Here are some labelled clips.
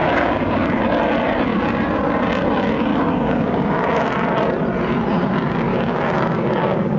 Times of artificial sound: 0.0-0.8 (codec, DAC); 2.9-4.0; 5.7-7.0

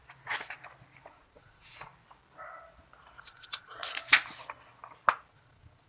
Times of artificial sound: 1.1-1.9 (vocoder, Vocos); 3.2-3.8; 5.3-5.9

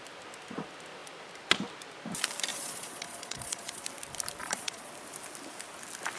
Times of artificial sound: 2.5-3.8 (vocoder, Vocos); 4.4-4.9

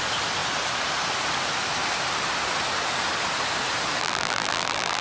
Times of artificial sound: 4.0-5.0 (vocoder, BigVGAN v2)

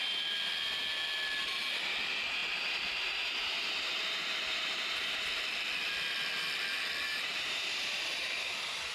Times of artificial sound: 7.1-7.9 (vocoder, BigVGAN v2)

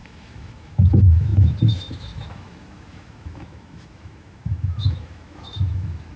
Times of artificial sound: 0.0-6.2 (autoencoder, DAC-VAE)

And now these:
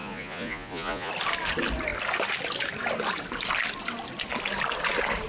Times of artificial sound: 0.0-1.1 (vocoder, Vocos)